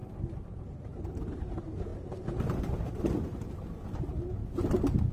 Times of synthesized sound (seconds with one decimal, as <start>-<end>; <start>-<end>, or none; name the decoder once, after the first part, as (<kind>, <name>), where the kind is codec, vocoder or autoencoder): none